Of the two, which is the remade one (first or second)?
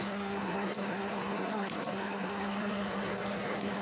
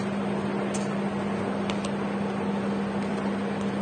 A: first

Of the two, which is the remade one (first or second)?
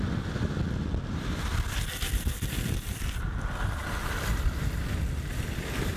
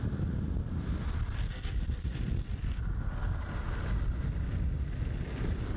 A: first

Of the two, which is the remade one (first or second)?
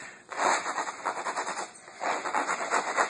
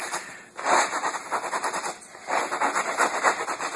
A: first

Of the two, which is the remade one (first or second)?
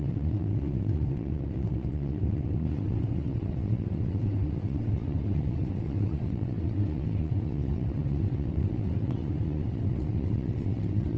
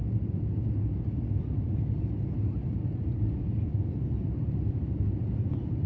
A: first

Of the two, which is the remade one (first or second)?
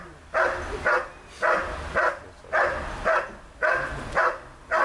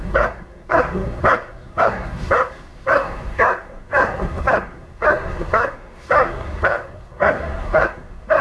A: second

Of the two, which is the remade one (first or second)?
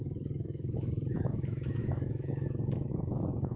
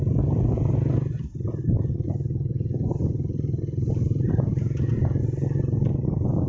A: first